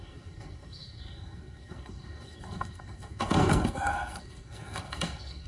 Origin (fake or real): fake